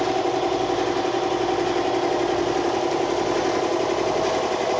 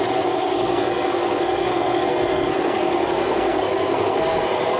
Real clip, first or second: first